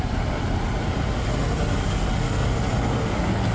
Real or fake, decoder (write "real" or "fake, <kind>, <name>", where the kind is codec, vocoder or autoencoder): real